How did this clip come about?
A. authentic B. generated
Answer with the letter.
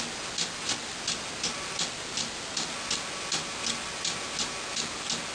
A